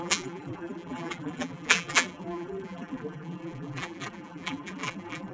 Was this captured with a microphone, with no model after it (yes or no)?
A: no